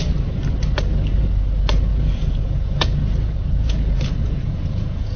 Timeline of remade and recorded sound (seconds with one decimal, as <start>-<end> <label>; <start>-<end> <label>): 0.0-1.9 recorded; 1.9-5.2 remade